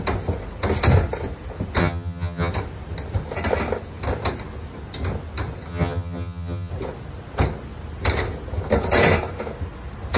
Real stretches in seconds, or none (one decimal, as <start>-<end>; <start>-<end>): 0.0-1.8; 2.5-5.7; 6.7-10.2